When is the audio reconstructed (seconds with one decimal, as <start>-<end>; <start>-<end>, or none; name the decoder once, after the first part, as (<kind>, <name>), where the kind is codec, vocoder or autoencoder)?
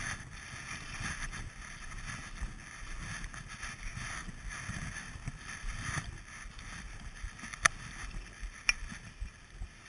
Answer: none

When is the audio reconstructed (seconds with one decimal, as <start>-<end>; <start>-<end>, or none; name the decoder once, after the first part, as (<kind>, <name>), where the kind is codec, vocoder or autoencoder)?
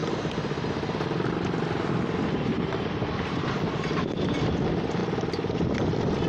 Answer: none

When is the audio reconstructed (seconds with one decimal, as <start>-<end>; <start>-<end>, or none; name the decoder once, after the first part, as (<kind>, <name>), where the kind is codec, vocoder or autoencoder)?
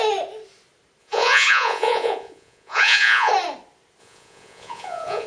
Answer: 1.0-3.3 (vocoder, Vocos); 4.0-5.3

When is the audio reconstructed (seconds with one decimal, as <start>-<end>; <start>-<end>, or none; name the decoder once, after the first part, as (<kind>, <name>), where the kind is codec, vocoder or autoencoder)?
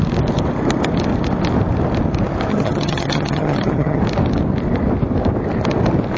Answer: 2.5-4.0 (vocoder, HiFi-GAN)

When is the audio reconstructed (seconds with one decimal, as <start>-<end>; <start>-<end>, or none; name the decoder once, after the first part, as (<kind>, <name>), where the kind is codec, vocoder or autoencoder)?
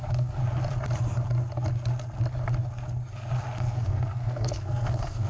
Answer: 0.0-0.4 (codec, SNAC); 3.6-5.3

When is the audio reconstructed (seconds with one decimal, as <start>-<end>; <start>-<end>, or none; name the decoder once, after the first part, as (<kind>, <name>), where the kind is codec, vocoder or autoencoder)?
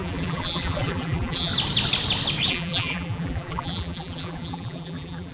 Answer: 0.0-1.5 (vocoder, BigVGAN v2); 2.5-5.3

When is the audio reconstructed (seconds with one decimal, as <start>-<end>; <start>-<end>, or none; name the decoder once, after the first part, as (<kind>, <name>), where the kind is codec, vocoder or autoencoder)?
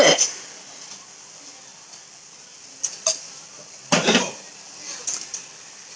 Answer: none